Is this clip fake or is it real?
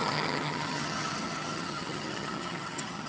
fake